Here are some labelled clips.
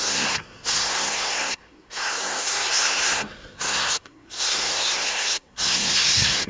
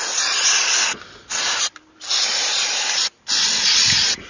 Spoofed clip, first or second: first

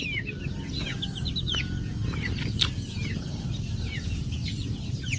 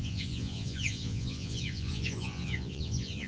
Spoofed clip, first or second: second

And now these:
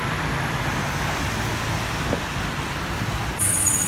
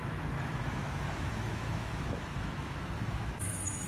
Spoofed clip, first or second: second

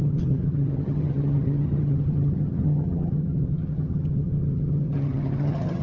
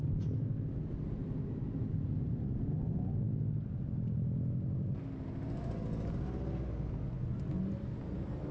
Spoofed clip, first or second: first